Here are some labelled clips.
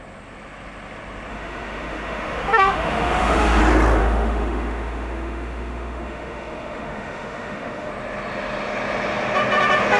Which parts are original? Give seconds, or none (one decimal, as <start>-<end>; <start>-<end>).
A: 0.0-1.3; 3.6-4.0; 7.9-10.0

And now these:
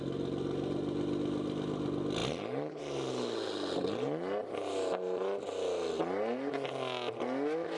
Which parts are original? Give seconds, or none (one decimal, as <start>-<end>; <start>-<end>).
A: 0.0-7.8

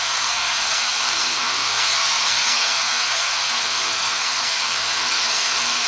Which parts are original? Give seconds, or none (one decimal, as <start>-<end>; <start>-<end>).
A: none

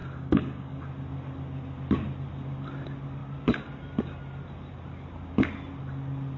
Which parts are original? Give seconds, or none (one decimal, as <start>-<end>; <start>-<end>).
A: 0.8-6.4

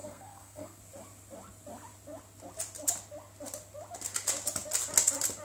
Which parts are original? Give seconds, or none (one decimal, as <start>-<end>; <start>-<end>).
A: 0.8-5.4